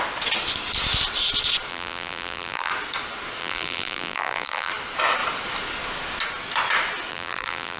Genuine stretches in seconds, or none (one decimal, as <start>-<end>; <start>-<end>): 0.0-1.7; 2.7-3.4; 4.7-7.1